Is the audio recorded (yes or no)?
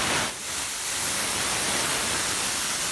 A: yes